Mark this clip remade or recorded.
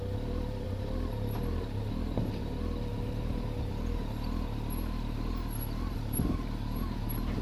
recorded